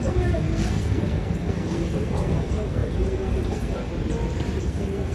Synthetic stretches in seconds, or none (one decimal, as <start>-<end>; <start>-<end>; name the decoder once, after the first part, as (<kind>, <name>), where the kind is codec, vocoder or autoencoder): 0.0-3.9 (codec, SNAC); 4.6-5.1